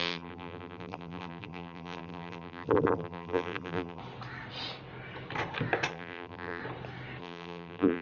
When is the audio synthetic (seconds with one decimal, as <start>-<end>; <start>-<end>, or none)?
0.0-4.0; 5.9-6.6; 7.2-8.0